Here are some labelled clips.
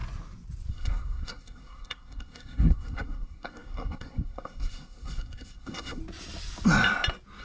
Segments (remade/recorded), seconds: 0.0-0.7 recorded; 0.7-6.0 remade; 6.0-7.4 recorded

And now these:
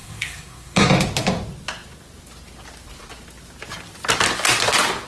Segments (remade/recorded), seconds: 0.0-0.9 remade; 0.9-5.1 recorded

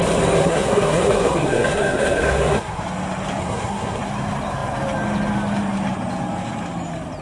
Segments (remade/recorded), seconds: 0.0-0.4 recorded; 0.4-2.8 remade; 2.8-3.4 recorded; 3.4-4.0 remade; 4.0-7.2 recorded

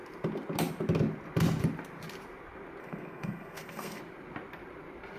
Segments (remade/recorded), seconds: 0.0-2.8 recorded; 2.8-4.0 remade; 4.0-5.2 recorded